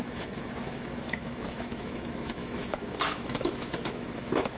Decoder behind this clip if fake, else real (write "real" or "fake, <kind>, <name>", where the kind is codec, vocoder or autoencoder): fake, autoencoder, DAC-VAE